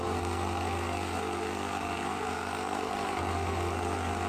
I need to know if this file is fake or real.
fake